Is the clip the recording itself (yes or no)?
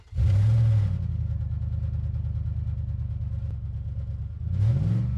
yes